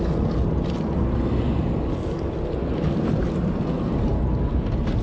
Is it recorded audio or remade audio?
recorded